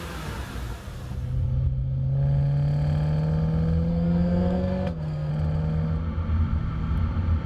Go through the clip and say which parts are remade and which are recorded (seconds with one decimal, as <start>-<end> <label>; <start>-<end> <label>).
0.0-3.9 recorded; 3.9-5.3 remade; 5.3-7.5 recorded